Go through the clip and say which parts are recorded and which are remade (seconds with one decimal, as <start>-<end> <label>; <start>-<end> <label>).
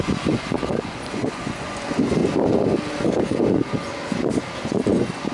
0.0-2.2 remade; 2.2-3.2 recorded; 3.2-3.9 remade; 3.9-4.6 recorded; 4.6-5.3 remade